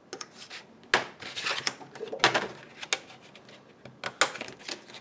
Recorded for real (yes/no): yes